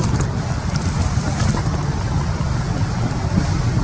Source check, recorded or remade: recorded